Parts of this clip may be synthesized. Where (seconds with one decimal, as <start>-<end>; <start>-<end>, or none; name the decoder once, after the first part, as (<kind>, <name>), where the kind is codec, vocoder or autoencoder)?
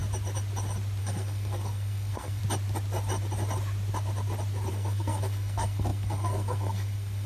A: 1.0-2.4 (codec, SNAC); 4.7-7.3